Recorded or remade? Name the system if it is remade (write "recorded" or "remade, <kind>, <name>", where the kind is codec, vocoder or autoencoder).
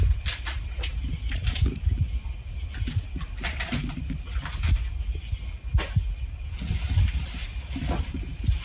recorded